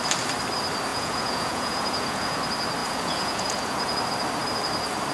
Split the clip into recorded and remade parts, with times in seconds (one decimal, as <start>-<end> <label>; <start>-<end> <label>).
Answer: 0.0-0.9 recorded; 0.9-2.4 remade; 2.4-2.8 recorded; 2.8-4.0 remade; 4.0-5.1 recorded